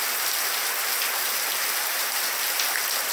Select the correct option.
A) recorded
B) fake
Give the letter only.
A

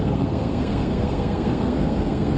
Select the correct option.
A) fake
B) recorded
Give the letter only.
A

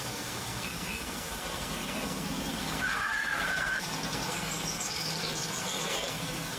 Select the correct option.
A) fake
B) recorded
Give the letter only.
A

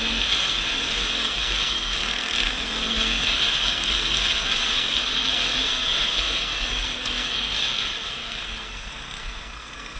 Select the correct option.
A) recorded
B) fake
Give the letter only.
B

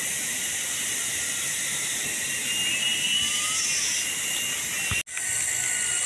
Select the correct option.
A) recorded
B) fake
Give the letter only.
A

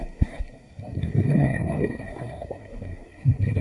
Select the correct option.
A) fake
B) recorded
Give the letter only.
A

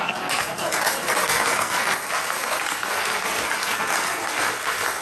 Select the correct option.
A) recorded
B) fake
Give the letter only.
B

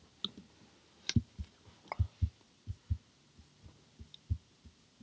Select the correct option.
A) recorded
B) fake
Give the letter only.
A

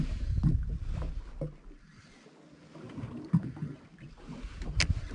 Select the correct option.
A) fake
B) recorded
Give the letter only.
B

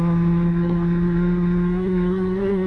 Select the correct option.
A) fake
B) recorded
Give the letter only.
A